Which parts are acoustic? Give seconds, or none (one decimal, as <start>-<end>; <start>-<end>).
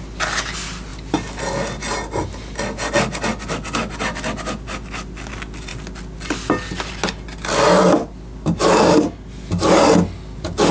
0.0-10.7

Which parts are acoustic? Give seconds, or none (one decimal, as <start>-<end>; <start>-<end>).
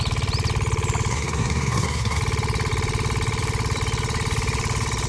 0.0-1.1; 2.2-5.1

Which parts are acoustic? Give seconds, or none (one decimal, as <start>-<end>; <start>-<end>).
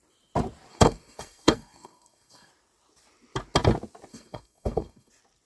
0.0-0.7; 2.5-4.1; 5.1-5.5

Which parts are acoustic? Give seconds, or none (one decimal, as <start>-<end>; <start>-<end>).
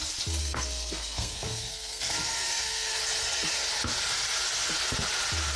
0.0-0.4; 3.0-5.6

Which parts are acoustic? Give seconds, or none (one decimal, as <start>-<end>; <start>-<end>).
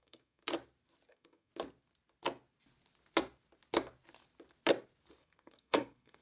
0.4-1.1; 1.5-5.2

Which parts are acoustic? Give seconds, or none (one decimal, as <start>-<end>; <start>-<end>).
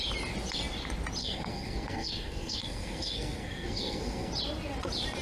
0.0-1.2; 4.3-5.2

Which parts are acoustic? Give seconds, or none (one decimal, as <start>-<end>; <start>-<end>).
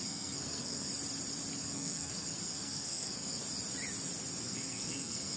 0.9-1.6; 3.4-4.4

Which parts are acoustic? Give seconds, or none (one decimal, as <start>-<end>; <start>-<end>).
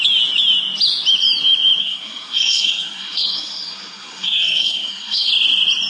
0.0-1.8; 5.3-5.9